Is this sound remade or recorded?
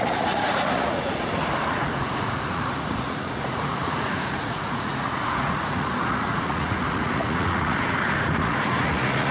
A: remade